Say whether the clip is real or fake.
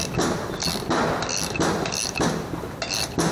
real